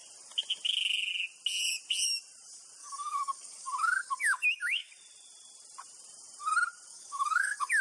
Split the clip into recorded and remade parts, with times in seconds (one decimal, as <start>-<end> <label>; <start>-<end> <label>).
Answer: 0.0-2.8 recorded; 2.8-4.9 remade; 4.9-6.9 recorded; 6.9-7.8 remade